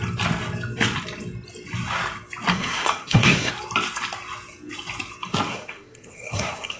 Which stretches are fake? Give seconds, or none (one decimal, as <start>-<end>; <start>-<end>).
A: 2.5-3.5; 5.5-6.8

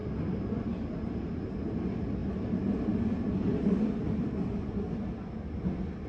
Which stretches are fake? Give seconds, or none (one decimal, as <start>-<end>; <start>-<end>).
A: none

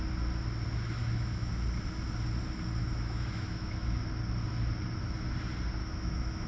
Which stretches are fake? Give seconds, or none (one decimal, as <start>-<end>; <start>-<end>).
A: 1.0-1.5; 2.8-4.0; 5.8-6.5

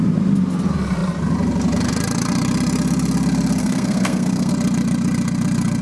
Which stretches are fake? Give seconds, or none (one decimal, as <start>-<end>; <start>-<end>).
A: 3.6-4.5

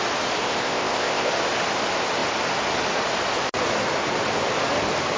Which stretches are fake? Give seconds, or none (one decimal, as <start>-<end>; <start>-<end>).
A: 0.4-1.3

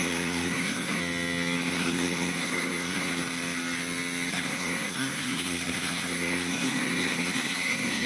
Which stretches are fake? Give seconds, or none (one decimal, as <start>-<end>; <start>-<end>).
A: 0.0-1.0; 1.7-3.1; 4.3-8.1